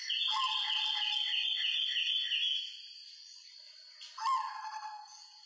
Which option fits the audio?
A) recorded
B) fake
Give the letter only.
A